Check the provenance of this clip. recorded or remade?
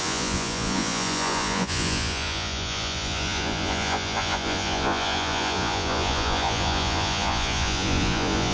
remade